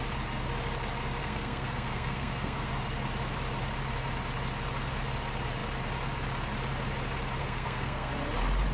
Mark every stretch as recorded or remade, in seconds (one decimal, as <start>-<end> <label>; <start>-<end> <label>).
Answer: 0.0-1.2 recorded; 1.2-2.7 remade; 2.7-7.4 recorded; 7.4-8.1 remade; 8.1-8.7 recorded